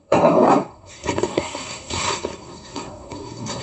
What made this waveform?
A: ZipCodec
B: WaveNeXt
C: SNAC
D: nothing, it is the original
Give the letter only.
C